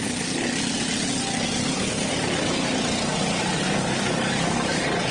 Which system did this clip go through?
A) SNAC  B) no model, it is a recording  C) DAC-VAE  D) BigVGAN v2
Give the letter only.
B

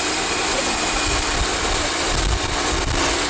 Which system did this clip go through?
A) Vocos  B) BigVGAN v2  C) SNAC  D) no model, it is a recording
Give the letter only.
D